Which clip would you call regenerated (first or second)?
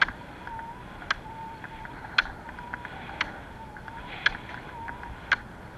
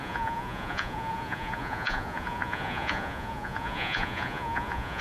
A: second